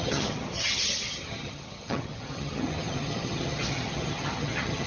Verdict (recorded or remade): remade